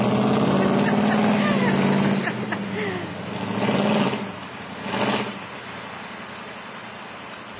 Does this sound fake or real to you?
real